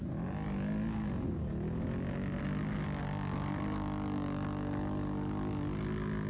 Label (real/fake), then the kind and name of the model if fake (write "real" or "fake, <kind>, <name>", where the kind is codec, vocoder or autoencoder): real